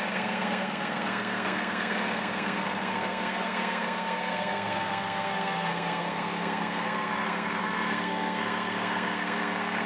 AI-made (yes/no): yes